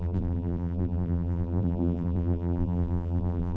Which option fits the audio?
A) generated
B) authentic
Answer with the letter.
A